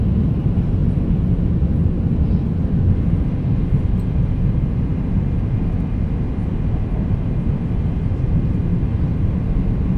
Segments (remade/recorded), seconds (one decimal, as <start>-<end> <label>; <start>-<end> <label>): 0.0-10.0 recorded